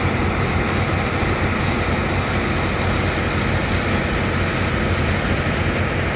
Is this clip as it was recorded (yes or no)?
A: yes